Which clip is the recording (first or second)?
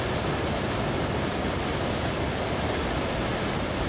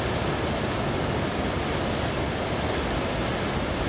second